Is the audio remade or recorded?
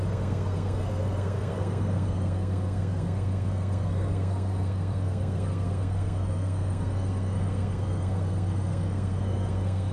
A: remade